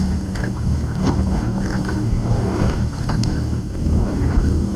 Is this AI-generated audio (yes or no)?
yes